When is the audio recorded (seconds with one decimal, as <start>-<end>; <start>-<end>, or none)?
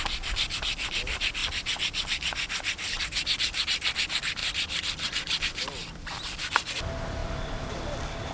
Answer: 0.0-8.3